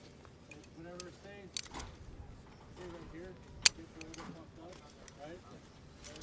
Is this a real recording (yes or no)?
yes